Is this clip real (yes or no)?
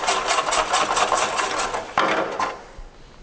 yes